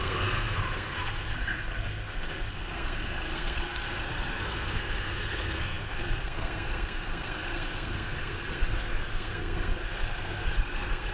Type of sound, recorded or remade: remade